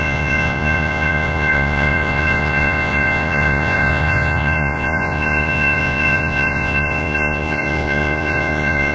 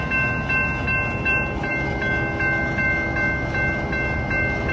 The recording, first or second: second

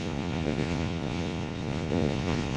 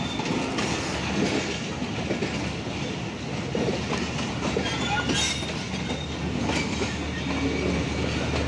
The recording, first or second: second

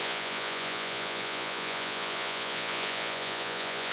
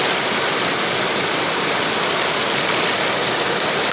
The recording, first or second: second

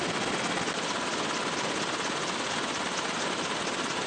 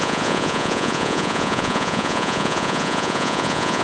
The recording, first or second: first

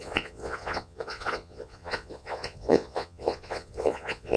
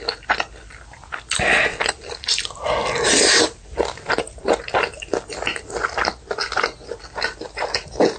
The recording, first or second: second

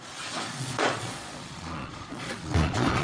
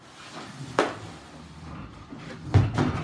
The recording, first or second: second